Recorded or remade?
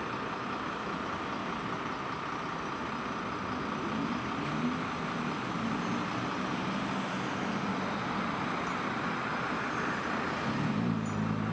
recorded